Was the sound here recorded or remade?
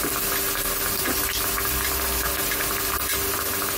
recorded